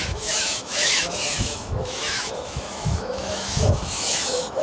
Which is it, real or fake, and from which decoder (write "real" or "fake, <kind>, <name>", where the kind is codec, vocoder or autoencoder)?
fake, autoencoder, DAC-VAE